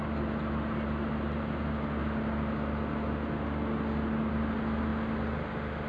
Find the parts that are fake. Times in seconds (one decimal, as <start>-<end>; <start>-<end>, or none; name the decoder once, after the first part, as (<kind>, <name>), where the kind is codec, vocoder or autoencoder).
none